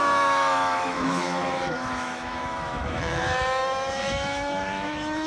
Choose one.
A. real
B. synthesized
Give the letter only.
B